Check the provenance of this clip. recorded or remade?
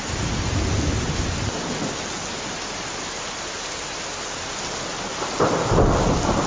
recorded